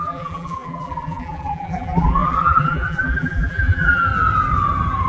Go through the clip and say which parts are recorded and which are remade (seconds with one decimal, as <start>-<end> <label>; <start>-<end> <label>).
0.0-4.1 remade; 4.1-5.1 recorded